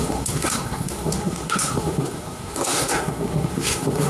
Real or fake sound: fake